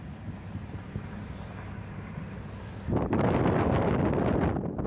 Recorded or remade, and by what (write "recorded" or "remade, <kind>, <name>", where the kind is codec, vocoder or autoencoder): recorded